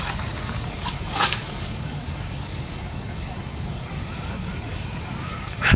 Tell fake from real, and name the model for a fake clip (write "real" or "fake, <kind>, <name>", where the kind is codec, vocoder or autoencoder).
fake, codec, DAC